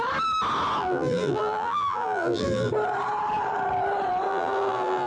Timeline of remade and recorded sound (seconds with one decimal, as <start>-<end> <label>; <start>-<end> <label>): 0.0-0.8 recorded; 0.8-2.7 remade; 2.7-4.3 recorded; 4.3-5.1 remade